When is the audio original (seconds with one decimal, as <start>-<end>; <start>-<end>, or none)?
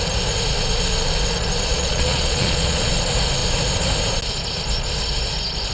0.0-1.7; 2.9-5.7